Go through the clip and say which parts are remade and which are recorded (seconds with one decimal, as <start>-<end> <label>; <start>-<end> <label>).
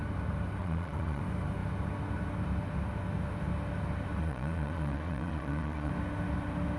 0.0-0.6 recorded; 0.6-1.2 remade; 1.2-4.2 recorded; 4.2-5.9 remade; 5.9-6.8 recorded